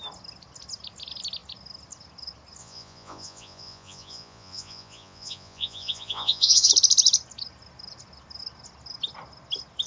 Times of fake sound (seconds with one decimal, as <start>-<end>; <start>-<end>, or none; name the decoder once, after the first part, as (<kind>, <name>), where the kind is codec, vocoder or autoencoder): 2.6-6.7 (vocoder, Vocos)